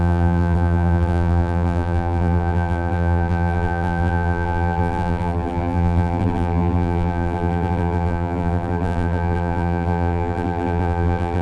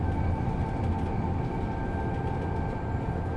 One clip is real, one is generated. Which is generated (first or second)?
first